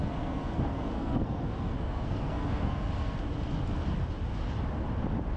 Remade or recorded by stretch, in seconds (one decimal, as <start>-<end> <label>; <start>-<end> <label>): 0.0-3.2 remade; 3.2-5.4 recorded